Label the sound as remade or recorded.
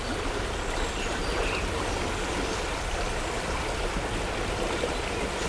recorded